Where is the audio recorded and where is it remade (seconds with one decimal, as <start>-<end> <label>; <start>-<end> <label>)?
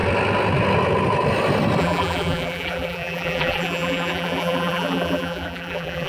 0.0-1.8 recorded; 1.8-6.1 remade